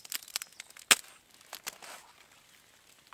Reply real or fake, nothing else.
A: real